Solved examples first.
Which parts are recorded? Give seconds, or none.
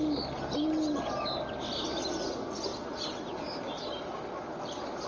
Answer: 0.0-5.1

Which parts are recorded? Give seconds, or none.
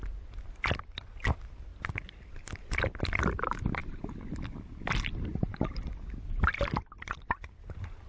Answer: 0.0-8.1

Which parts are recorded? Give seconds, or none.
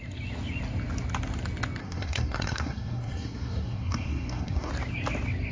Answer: 0.0-1.8; 4.7-5.5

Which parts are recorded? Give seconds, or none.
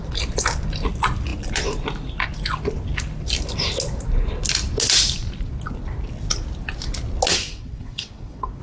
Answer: 0.0-7.3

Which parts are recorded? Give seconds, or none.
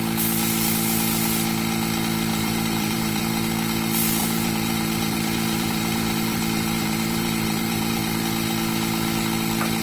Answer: 0.0-2.3; 3.2-4.2; 8.2-9.8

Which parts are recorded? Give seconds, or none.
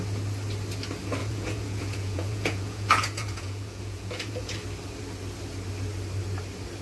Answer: 0.0-1.2; 4.6-6.8